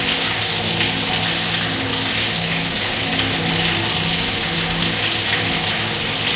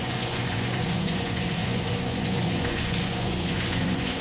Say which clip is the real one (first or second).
first